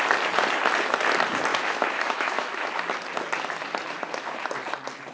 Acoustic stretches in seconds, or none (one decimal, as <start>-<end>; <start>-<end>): 0.0-1.5; 2.7-5.1